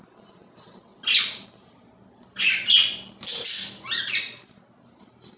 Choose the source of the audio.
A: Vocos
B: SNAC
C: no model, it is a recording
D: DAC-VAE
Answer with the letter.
C